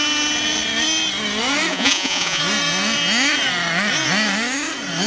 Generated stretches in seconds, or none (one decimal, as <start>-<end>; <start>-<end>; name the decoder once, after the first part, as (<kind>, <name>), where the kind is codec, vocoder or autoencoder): 1.7-2.4 (vocoder, Vocos)